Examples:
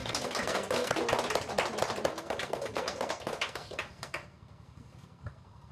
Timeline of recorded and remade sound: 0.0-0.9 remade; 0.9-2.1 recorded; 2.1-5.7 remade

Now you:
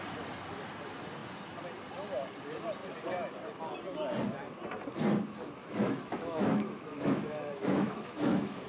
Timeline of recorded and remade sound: 0.0-5.6 recorded; 5.6-8.7 remade

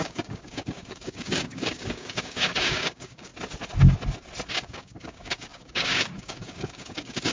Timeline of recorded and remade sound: 0.0-3.3 remade; 3.3-4.5 recorded; 4.5-7.3 remade

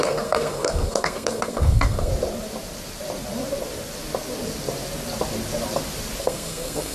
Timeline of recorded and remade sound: 0.0-2.1 remade; 2.1-6.2 recorded; 6.2-6.9 remade

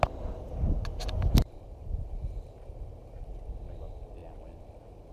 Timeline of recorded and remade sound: 0.0-0.9 recorded; 0.9-3.4 remade; 3.4-5.1 recorded

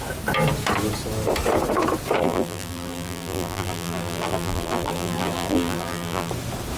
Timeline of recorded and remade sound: 0.0-2.2 recorded; 2.2-6.3 remade; 6.3-6.8 recorded